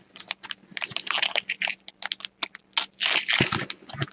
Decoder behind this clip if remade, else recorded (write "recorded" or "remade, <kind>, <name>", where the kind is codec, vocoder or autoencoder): recorded